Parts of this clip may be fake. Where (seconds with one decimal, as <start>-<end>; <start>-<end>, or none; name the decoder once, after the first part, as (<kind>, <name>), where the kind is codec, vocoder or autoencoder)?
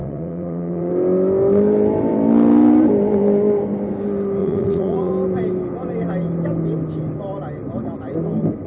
0.0-0.9 (vocoder, Vocos); 4.4-5.1